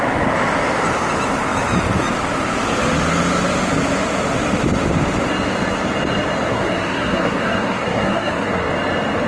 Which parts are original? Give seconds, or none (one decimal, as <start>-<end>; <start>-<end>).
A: 0.0-6.5; 8.7-9.3